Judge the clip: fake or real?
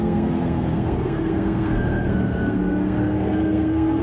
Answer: fake